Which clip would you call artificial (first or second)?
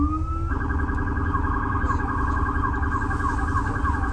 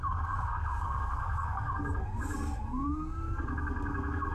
second